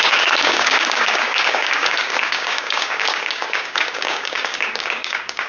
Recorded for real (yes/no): no